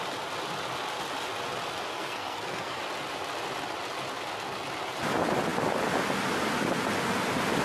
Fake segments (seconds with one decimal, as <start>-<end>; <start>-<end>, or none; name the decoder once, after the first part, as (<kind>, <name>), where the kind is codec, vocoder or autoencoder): 1.9-2.8 (codec, SNAC)